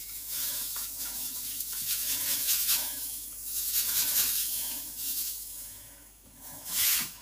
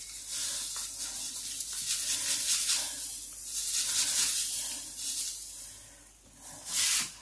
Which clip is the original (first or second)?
second